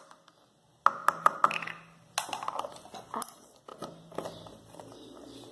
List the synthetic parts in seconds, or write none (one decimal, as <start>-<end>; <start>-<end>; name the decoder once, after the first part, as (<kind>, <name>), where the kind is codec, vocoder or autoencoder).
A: none